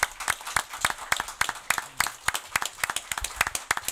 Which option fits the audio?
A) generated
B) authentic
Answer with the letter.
B